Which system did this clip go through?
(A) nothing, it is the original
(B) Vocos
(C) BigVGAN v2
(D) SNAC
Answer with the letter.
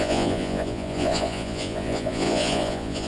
B